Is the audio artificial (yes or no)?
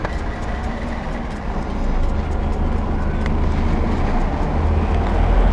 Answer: no